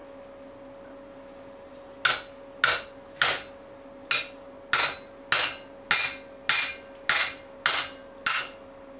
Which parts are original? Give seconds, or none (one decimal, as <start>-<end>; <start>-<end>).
0.0-9.0